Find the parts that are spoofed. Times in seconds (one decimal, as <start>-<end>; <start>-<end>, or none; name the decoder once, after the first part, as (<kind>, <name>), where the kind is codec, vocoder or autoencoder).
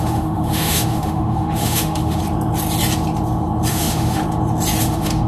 0.0-2.2 (autoencoder, DAC-VAE); 3.7-4.2; 4.8-5.3